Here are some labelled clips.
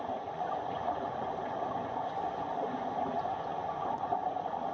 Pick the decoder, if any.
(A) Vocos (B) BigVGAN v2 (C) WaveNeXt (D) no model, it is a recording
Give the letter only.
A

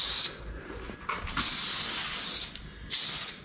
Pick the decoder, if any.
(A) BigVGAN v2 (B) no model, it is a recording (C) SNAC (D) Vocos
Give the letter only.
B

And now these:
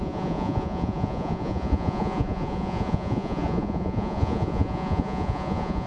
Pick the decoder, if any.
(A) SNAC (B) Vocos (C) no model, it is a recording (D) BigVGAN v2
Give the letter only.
B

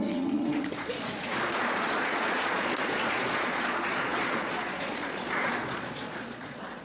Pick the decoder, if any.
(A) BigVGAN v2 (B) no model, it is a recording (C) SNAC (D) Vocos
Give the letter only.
D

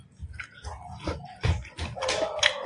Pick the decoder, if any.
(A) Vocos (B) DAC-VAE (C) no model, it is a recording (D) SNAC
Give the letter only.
C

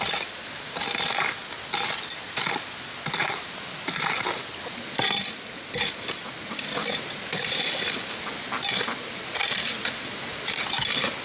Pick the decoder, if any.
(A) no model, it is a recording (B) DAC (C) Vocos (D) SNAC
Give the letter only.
A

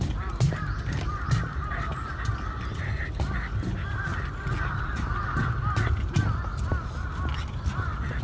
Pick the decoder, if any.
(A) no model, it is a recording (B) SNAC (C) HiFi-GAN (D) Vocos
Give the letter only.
A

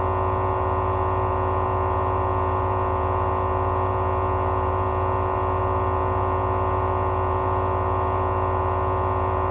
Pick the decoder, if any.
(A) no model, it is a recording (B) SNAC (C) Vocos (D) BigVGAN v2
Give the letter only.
C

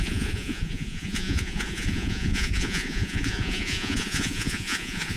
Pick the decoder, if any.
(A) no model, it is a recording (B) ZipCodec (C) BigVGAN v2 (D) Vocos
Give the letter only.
D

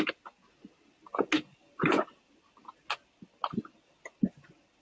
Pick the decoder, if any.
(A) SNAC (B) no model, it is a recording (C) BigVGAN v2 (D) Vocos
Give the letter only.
B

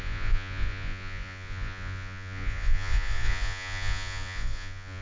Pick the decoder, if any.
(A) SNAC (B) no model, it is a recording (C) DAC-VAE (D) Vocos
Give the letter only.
D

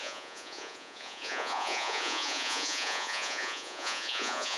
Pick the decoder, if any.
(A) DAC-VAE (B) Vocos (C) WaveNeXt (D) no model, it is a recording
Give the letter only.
B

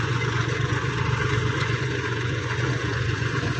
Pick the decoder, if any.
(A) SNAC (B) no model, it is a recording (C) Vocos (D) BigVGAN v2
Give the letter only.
C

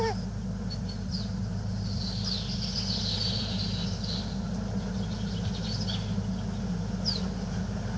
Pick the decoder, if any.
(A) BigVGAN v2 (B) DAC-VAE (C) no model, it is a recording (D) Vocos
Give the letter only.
C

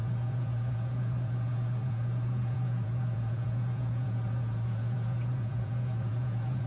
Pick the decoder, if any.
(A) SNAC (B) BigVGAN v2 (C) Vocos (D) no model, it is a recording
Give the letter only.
C